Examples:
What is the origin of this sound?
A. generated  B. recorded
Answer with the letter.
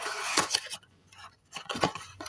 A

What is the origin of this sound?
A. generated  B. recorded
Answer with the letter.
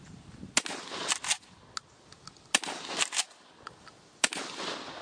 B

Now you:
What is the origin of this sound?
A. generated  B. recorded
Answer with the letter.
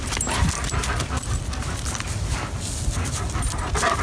B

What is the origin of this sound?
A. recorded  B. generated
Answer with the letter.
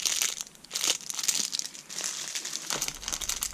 A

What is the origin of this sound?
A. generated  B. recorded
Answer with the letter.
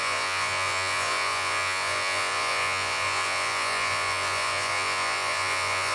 A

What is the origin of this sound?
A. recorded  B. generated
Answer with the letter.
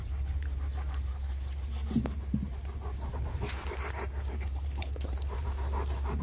B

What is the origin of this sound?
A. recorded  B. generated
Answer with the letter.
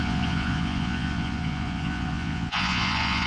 B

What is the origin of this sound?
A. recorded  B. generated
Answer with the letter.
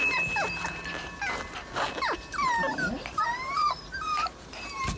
A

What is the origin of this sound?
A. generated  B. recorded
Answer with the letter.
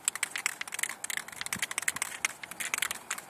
B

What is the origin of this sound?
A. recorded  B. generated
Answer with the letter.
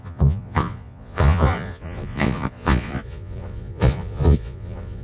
B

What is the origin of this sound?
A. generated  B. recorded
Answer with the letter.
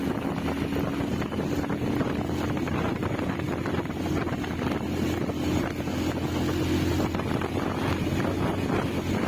B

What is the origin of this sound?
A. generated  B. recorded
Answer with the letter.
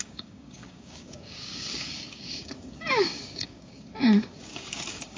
A